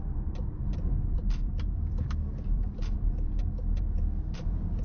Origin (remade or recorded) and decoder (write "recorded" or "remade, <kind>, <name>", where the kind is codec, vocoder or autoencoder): remade, vocoder, BigVGAN v2